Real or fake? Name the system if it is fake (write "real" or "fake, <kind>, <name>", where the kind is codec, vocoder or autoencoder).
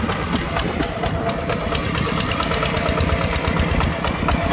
real